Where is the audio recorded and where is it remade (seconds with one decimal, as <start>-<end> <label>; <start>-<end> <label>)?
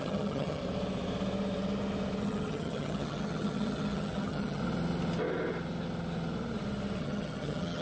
0.0-0.6 remade; 0.6-2.2 recorded; 2.2-4.6 remade; 4.6-7.0 recorded; 7.0-7.8 remade